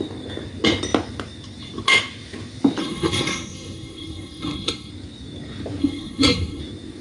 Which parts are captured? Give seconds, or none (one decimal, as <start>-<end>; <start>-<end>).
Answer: 0.0-2.8; 4.9-5.8; 6.6-7.0

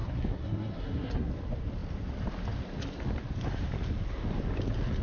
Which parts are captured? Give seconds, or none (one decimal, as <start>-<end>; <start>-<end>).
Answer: 1.3-5.0

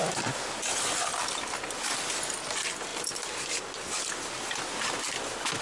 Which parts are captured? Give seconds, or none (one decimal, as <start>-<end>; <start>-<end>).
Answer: 0.0-5.6

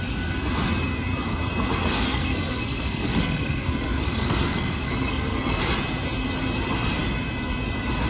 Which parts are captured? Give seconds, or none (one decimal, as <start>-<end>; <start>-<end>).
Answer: 0.0-1.9; 5.6-8.1

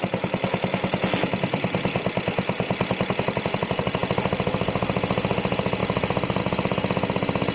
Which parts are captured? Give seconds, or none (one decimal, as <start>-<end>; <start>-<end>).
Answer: 0.0-7.5